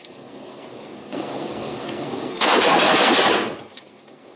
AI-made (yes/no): yes